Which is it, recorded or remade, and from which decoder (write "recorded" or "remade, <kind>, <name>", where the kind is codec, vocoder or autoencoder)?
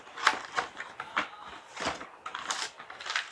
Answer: recorded